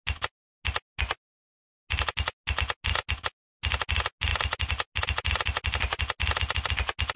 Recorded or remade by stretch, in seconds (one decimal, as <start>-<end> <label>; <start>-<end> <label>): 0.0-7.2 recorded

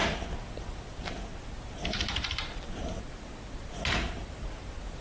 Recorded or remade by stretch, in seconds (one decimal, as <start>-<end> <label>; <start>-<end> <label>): 0.0-5.0 recorded

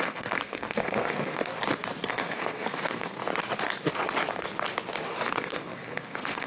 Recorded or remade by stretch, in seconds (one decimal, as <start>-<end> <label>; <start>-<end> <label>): 0.0-1.5 remade; 1.5-2.1 recorded; 2.1-3.2 remade; 3.2-5.3 recorded; 5.3-6.5 remade